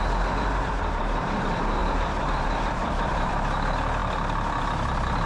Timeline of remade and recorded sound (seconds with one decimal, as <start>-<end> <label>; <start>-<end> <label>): 0.0-1.8 recorded; 1.8-3.3 remade; 3.3-5.3 recorded